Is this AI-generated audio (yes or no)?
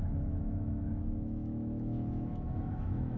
yes